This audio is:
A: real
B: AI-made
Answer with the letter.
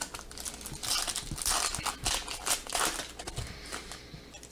A